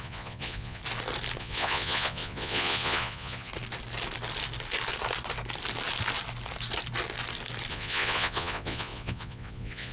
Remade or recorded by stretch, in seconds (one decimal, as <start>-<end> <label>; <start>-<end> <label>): 0.0-0.8 remade; 0.8-1.4 recorded; 1.4-3.5 remade; 3.5-7.7 recorded; 7.7-9.9 remade